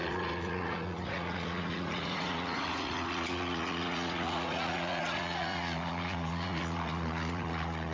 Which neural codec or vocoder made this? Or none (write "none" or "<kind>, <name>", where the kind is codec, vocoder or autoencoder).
vocoder, Vocos